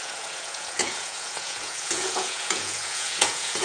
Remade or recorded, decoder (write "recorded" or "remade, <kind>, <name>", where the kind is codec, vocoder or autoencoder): remade, vocoder, Vocos